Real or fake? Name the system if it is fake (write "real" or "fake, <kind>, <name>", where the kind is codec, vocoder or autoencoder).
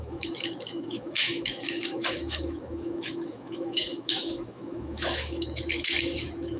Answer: fake, autoencoder, DAC-VAE